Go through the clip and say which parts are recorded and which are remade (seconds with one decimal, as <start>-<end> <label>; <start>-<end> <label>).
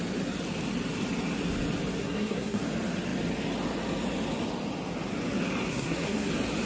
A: 0.0-2.0 recorded; 2.0-2.6 remade; 2.6-5.7 recorded; 5.7-6.3 remade; 6.3-6.7 recorded